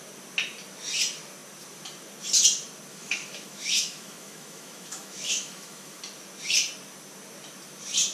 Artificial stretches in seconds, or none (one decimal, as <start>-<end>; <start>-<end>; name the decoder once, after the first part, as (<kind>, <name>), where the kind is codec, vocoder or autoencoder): 2.9-6.0 (autoencoder, DAC-VAE)